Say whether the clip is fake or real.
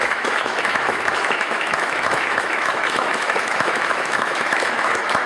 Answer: fake